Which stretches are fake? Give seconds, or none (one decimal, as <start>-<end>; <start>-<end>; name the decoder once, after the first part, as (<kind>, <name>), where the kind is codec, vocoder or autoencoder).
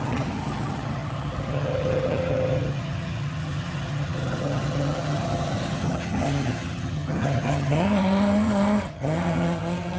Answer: 0.0-10.0 (vocoder, HiFi-GAN)